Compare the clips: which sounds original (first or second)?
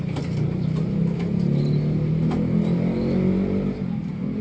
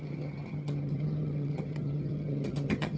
first